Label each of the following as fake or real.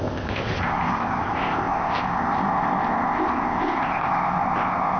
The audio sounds fake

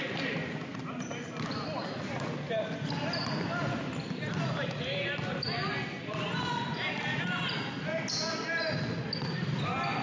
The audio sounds real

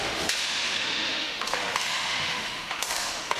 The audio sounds fake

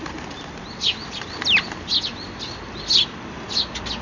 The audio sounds real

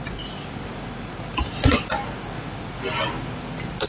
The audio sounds real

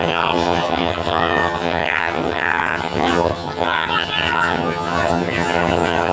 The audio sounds fake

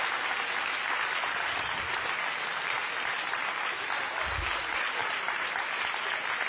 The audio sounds real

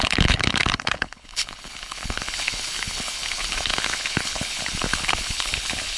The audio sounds fake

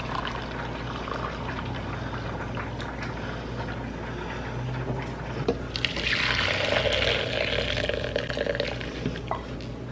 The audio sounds real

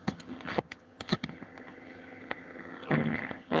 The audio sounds fake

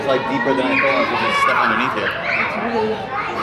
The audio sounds real